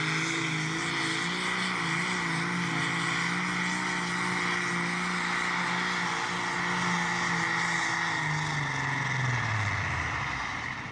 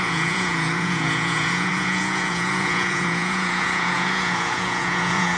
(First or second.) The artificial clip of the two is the second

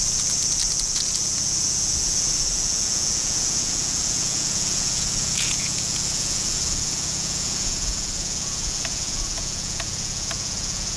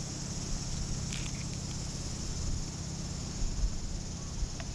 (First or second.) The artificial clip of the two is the first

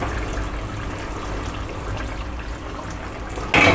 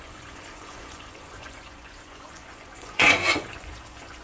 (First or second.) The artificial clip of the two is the second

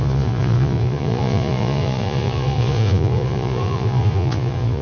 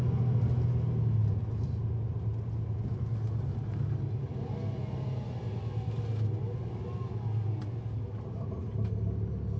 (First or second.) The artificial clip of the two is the first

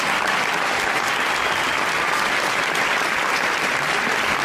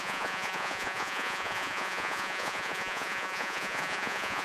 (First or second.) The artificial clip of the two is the second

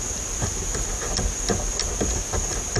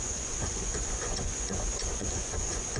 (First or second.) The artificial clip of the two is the second